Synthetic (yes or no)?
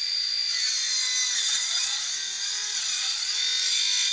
no